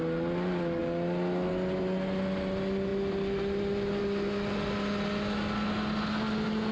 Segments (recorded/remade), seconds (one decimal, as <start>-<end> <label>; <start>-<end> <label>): 0.0-6.7 recorded